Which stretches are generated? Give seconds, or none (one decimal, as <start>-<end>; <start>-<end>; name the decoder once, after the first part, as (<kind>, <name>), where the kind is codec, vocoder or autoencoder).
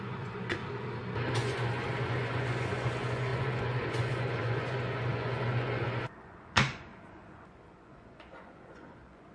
0.0-0.6 (vocoder, Vocos); 1.3-9.3